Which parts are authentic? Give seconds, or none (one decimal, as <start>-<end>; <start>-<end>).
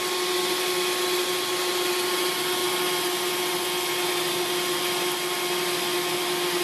0.0-6.6